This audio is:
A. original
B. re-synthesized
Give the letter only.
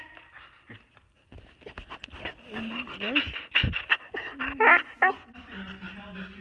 A